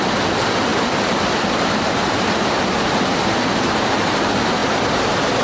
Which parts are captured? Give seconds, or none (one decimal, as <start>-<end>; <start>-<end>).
0.0-0.7; 3.2-5.4